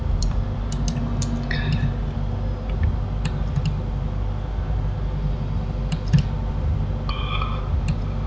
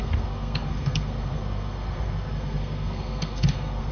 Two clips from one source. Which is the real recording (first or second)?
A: first